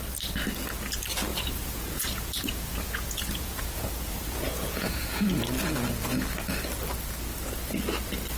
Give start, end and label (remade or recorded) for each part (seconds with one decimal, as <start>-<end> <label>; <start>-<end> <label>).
0.0-1.3 recorded; 1.3-5.3 remade; 5.3-8.4 recorded